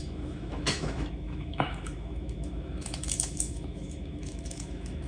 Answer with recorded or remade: remade